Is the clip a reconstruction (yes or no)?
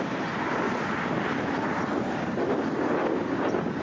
no